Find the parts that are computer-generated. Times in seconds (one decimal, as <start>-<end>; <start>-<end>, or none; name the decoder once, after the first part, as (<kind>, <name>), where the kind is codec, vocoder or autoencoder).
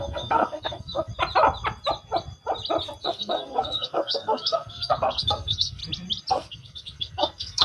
0.0-1.1 (codec, SNAC); 3.0-5.8; 6.3-7.6